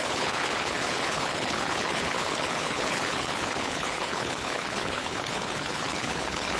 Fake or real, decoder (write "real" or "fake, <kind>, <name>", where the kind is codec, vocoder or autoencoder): fake, codec, HILCodec